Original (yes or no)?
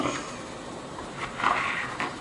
yes